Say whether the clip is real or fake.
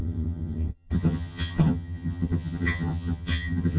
fake